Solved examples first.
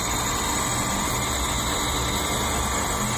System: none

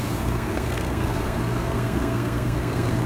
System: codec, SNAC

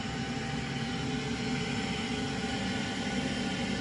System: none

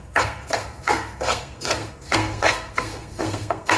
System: codec, SNAC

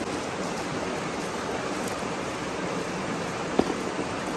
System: none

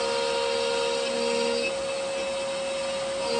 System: none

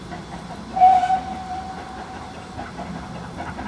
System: none